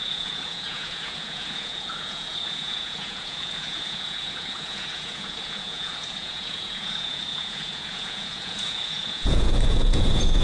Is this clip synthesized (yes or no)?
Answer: yes